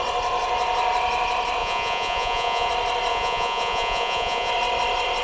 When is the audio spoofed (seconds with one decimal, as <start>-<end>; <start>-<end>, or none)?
1.6-2.7; 3.1-4.5